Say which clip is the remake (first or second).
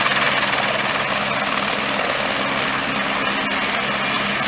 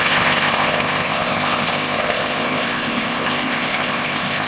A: second